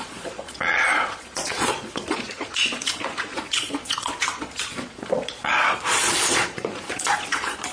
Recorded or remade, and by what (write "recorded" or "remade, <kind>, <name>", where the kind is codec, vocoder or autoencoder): remade, vocoder, Vocos